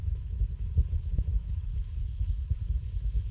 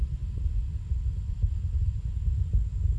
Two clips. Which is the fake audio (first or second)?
first